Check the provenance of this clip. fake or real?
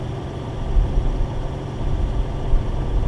real